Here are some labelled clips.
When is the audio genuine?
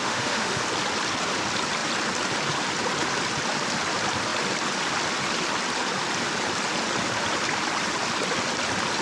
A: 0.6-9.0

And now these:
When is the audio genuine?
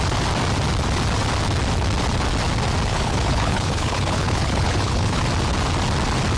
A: 0.0-2.9; 5.2-6.4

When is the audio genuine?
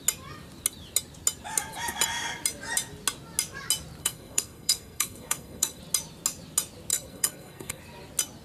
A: 0.0-4.0; 5.8-6.9; 7.8-8.4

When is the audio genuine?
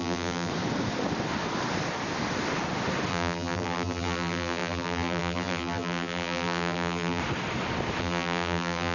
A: 0.5-3.1; 7.2-8.0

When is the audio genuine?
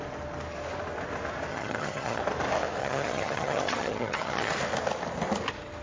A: 0.0-1.5; 2.2-2.8; 4.5-5.8